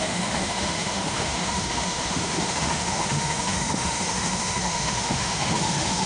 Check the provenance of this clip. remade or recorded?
remade